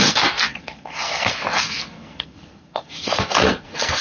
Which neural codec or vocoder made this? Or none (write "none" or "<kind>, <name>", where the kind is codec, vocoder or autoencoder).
codec, SNAC